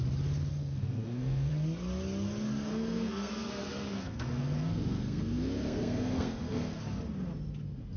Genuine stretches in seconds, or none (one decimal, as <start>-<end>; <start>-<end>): 0.0-0.5; 1.5-2.7; 6.8-8.0